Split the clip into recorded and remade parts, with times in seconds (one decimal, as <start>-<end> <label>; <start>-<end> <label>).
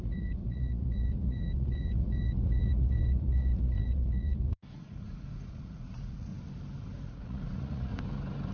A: 0.0-6.3 remade; 6.3-7.1 recorded; 7.1-7.9 remade; 7.9-8.5 recorded